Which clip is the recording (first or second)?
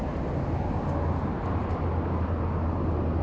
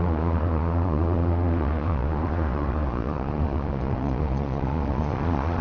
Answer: first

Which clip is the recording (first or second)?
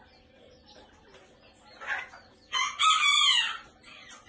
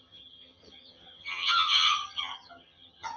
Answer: first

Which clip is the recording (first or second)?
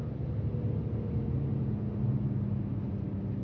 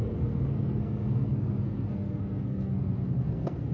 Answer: first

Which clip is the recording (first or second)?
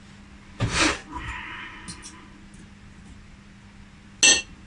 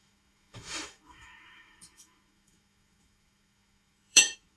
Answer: first